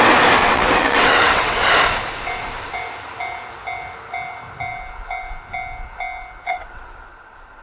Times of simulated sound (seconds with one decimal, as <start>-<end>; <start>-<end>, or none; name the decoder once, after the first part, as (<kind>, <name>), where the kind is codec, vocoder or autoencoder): 0.4-1.7 (vocoder, WaveNeXt); 6.5-7.1